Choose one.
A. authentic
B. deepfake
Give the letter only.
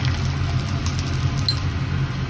A